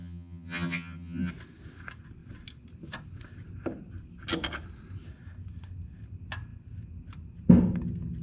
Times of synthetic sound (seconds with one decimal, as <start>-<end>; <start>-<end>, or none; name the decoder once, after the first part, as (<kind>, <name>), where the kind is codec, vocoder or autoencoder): 0.0-1.3 (vocoder, HiFi-GAN)